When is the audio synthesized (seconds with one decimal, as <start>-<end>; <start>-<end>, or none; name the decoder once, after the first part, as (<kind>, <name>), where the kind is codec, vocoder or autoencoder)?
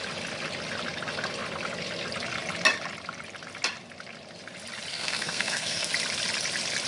4.9-5.9 (codec, SNAC)